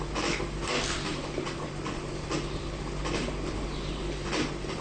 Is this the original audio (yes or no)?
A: yes